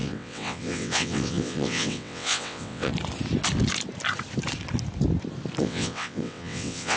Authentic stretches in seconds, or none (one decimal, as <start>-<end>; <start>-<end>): 2.9-5.6